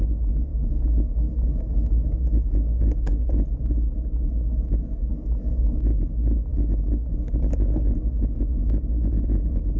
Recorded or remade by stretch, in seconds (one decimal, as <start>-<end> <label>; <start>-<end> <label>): 0.0-0.5 recorded; 0.5-3.1 remade; 3.1-5.1 recorded; 5.1-5.8 remade; 5.8-6.5 recorded; 6.5-7.1 remade; 7.1-9.8 recorded